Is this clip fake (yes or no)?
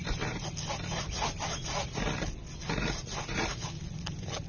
no